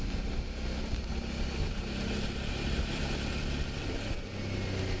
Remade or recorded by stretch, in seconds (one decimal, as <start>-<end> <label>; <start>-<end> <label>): 0.0-1.6 recorded; 1.6-3.4 remade; 3.4-5.0 recorded